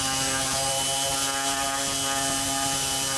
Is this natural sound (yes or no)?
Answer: yes